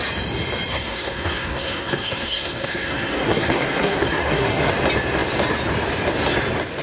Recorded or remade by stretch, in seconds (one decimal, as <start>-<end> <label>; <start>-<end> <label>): 0.0-0.7 recorded; 0.7-4.7 remade; 4.7-6.8 recorded

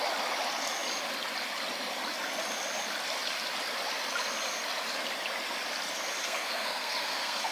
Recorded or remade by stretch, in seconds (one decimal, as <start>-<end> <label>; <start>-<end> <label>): 0.0-6.2 recorded; 6.2-7.5 remade

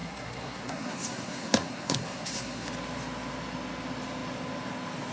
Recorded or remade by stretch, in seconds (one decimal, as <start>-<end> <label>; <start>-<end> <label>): 0.0-2.7 remade; 2.7-5.1 recorded